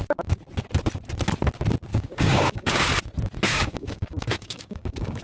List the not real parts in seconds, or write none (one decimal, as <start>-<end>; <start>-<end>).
1.9-2.9; 3.5-5.2